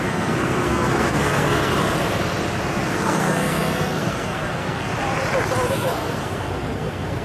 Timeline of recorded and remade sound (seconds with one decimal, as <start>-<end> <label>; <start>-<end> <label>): 0.0-1.7 remade; 1.7-2.7 recorded; 2.7-4.9 remade; 4.9-5.7 recorded; 5.7-7.2 remade